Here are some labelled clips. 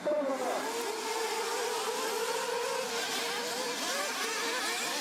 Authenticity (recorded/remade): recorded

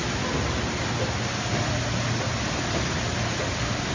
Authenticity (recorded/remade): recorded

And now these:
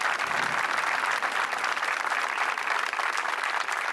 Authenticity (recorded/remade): recorded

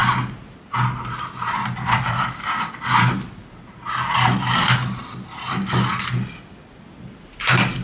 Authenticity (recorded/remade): recorded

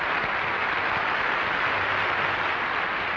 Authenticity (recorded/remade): recorded